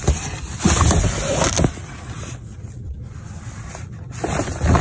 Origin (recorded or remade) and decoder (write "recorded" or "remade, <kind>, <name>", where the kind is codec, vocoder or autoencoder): recorded